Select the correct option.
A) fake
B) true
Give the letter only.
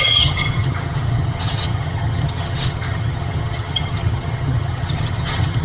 A